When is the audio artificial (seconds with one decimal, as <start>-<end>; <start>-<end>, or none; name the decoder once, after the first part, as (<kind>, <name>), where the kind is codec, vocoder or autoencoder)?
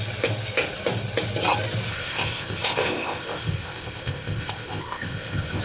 1.9-5.6 (codec, ZipCodec)